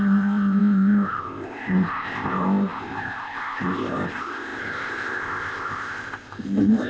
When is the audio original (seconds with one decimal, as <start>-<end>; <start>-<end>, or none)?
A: none